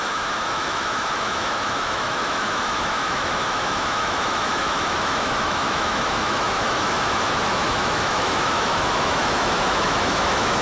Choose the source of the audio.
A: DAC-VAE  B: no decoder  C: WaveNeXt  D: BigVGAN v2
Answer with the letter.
A